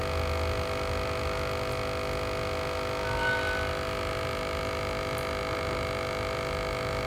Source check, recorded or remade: recorded